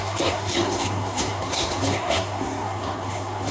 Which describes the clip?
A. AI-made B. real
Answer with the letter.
A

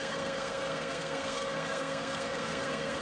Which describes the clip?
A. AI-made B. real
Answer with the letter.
A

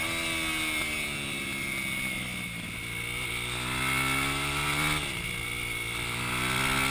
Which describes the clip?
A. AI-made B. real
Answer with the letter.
B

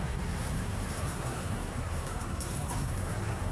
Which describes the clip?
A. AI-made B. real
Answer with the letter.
A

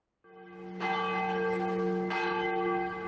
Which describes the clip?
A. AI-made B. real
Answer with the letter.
B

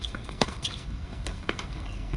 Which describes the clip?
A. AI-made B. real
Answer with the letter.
A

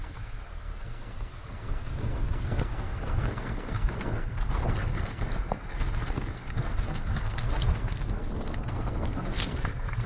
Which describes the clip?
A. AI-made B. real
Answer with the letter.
A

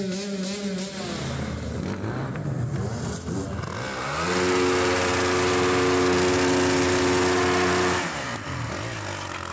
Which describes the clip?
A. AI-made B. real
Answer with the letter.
B